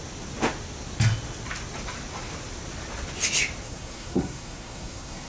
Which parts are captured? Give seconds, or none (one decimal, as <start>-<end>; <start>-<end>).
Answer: 0.0-3.6